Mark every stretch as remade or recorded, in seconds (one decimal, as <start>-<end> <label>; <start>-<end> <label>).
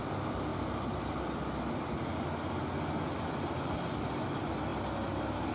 0.0-5.5 recorded